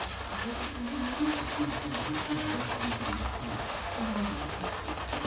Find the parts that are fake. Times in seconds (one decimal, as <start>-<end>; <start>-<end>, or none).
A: 0.4-1.4; 2.0-2.6; 3.5-4.6